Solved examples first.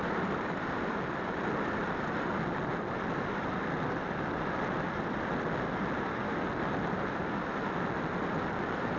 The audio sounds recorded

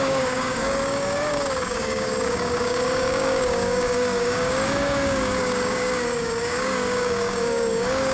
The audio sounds remade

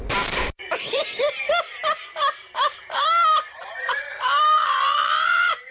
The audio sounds remade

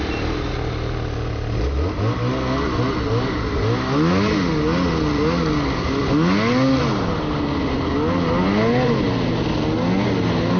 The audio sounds recorded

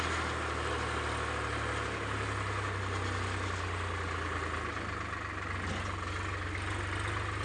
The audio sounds recorded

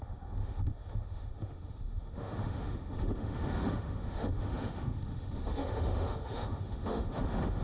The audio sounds remade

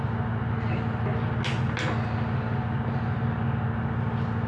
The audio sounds recorded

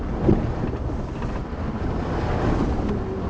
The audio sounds recorded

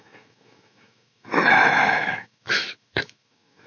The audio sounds remade